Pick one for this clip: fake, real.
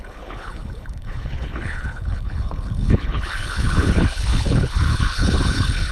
fake